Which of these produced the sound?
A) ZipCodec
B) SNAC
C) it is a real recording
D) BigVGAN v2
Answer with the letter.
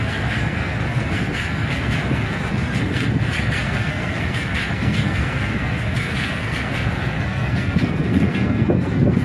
B